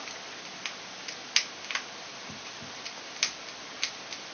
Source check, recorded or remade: recorded